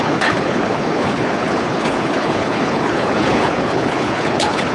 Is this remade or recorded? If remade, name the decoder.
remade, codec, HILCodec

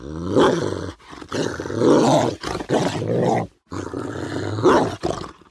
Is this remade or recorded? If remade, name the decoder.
recorded